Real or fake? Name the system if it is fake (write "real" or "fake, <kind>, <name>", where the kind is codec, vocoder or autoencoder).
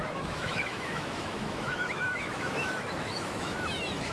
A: fake, autoencoder, DAC-VAE